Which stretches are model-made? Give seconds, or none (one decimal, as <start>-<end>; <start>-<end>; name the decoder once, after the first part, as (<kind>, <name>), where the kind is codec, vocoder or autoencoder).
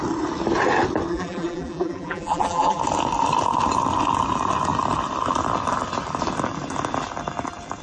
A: 1.1-2.8 (vocoder, BigVGAN v2)